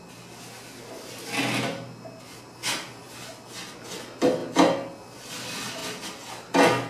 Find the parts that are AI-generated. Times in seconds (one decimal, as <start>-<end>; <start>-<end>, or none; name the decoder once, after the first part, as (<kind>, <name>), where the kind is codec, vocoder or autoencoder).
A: none

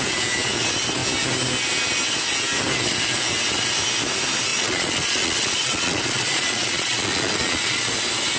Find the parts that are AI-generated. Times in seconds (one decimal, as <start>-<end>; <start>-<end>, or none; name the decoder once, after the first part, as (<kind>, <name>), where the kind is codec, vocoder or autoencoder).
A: 4.5-7.9 (vocoder, Vocos)

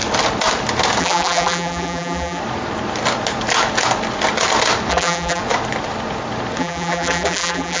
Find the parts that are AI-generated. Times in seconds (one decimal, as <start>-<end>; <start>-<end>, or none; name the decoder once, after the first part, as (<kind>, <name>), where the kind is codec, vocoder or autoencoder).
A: 1.0-2.4 (vocoder, BigVGAN v2); 4.9-5.4; 6.6-7.8